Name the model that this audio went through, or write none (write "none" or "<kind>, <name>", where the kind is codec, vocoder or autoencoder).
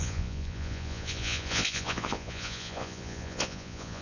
vocoder, Vocos